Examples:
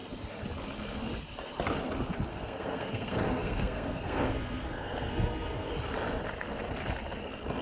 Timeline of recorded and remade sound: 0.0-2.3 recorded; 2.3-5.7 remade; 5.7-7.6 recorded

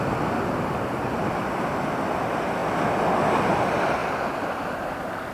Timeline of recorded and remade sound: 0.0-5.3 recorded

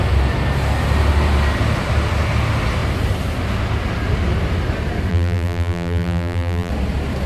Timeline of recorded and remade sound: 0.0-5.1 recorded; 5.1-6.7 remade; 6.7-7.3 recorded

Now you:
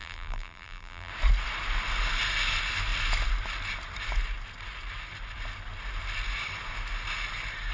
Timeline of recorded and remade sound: 0.0-1.1 remade; 1.1-7.7 recorded

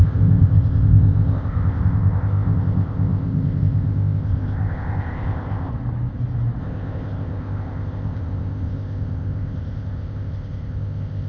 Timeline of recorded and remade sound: 0.0-5.7 remade; 5.7-6.6 recorded; 6.6-11.3 remade